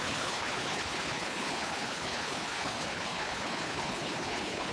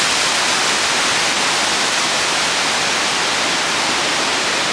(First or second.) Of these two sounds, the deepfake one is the first